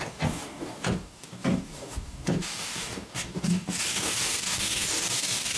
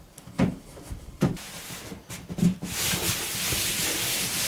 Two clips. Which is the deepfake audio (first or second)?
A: first